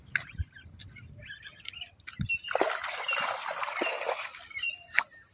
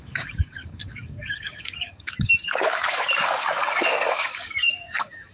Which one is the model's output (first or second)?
second